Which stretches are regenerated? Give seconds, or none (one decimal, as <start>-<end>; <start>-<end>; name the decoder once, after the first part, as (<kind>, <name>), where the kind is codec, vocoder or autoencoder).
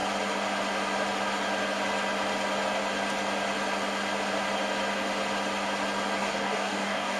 6.2-7.2 (codec, DAC)